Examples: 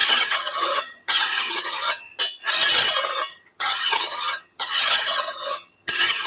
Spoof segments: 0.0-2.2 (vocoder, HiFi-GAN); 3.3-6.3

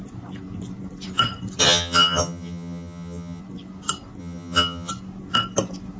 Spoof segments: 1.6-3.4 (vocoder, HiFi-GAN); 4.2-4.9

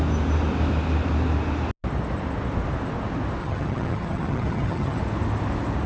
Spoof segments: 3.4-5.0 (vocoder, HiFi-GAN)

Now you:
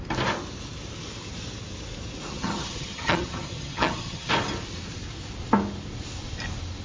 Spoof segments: 2.3-4.3 (vocoder, HiFi-GAN)

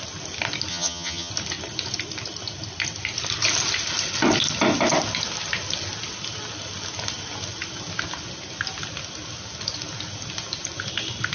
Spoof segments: 0.7-1.3 (vocoder, HiFi-GAN)

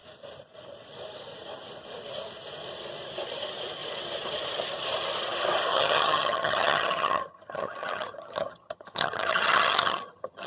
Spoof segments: 5.7-10.5 (vocoder, HiFi-GAN)

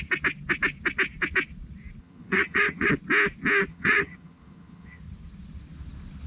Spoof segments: 2.0-2.9 (vocoder, HiFi-GAN); 3.7-5.0